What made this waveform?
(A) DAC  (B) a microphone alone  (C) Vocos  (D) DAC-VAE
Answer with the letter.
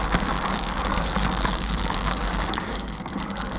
A